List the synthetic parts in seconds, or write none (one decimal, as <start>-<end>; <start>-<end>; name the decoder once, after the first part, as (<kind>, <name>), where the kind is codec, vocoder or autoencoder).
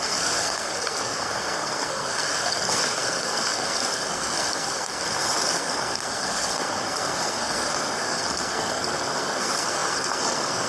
0.0-10.7 (codec, SNAC)